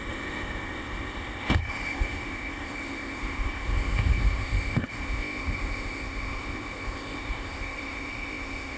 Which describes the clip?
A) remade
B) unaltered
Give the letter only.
A